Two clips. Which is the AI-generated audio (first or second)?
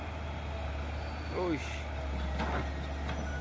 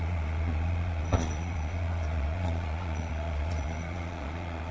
second